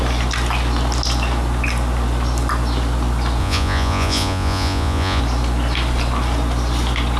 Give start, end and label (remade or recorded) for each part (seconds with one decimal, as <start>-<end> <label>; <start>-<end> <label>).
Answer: 0.0-3.4 recorded; 3.4-5.2 remade; 5.2-7.2 recorded